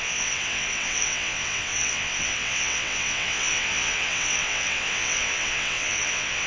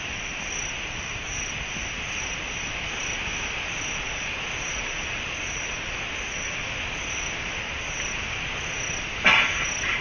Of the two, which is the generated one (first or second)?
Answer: first